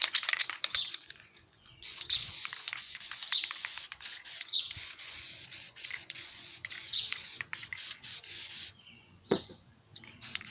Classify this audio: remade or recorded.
remade